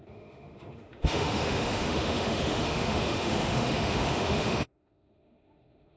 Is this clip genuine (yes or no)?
no